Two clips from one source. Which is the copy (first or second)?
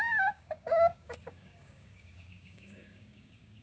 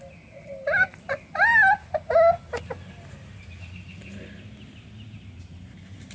first